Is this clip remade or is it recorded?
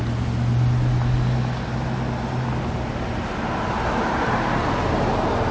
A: recorded